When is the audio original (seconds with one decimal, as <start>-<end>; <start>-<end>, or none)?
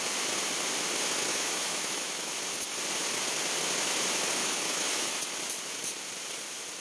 0.0-1.3; 2.3-4.4; 5.2-6.8